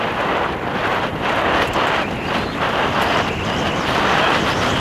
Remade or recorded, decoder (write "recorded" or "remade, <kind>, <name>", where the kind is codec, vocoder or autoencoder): recorded